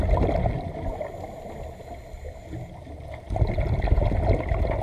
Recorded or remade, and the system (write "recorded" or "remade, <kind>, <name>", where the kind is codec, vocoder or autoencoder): recorded